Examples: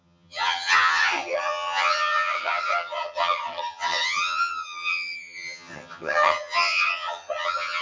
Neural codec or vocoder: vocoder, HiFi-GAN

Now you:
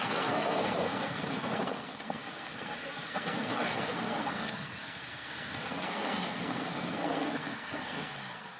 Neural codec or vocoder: codec, SNAC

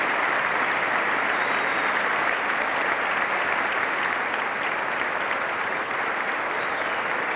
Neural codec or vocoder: none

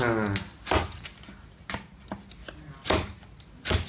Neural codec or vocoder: none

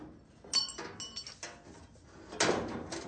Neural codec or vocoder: none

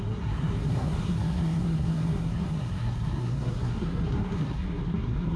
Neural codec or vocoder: codec, SNAC